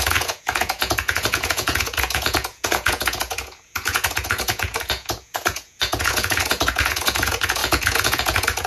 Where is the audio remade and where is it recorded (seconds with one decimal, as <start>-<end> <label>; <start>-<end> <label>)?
0.0-8.7 remade